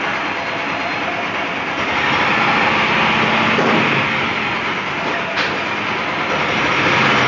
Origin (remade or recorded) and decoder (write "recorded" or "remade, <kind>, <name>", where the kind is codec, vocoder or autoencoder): recorded